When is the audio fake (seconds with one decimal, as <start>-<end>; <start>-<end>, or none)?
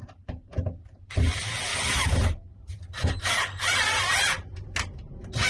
0.0-5.5